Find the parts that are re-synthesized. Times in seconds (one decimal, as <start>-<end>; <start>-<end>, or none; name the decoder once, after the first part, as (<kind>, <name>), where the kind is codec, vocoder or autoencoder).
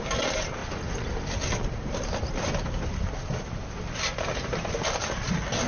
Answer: 0.6-3.5 (vocoder, BigVGAN v2)